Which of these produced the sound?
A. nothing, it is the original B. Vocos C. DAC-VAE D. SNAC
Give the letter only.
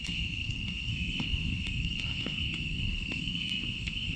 D